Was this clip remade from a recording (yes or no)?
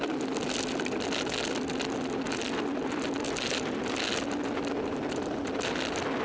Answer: no